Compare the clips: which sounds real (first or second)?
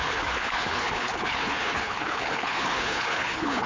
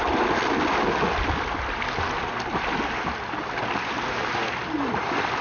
second